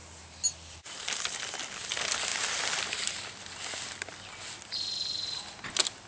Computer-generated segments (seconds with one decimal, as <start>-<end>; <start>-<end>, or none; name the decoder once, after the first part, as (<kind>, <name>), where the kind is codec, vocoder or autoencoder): none